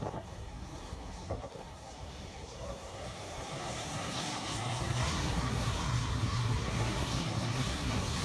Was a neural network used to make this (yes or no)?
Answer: yes